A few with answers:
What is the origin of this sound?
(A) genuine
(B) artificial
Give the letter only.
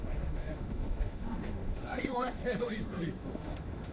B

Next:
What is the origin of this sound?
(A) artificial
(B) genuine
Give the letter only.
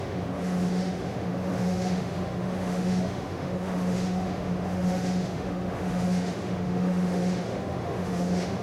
A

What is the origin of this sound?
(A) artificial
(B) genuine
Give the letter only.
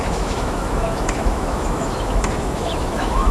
A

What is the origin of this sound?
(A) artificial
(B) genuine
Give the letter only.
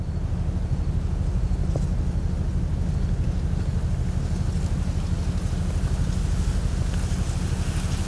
B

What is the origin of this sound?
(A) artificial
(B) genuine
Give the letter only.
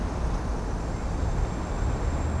B